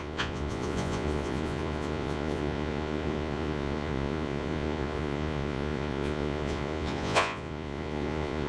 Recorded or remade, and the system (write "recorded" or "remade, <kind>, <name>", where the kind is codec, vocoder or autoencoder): remade, vocoder, Vocos